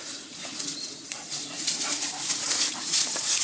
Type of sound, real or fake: fake